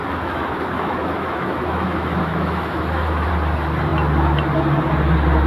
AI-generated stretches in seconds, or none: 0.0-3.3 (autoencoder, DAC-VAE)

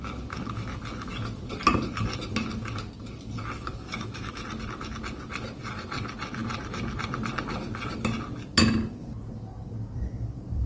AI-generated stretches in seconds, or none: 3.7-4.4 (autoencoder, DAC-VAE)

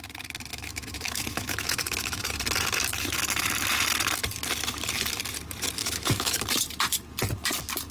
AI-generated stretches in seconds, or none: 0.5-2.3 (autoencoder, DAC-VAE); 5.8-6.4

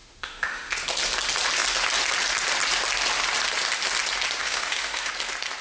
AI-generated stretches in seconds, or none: 0.0-0.7 (autoencoder, DAC-VAE); 4.4-5.1